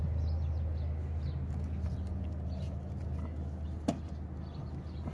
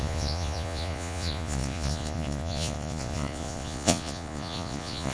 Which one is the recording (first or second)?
first